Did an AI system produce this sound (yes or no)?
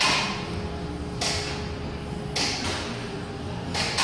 no